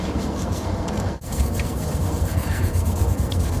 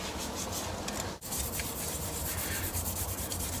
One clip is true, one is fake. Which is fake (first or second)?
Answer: first